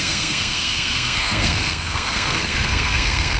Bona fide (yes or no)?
no